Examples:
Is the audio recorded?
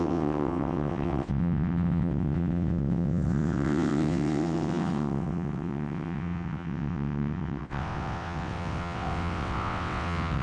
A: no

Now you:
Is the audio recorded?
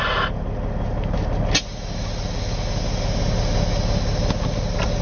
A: yes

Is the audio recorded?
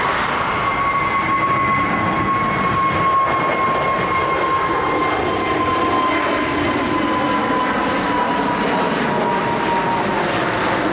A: yes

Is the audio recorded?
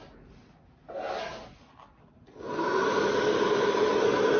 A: yes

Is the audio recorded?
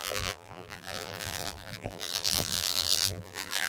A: no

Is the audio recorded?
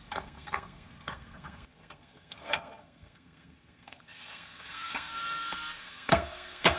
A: no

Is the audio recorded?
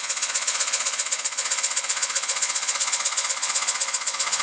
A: no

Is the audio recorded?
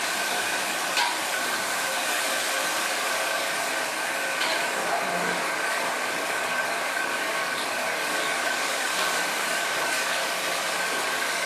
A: no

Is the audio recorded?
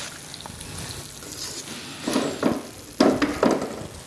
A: yes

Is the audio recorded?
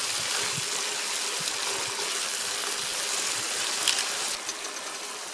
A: yes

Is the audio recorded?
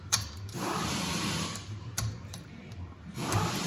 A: no